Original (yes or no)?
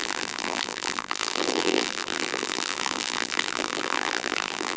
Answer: no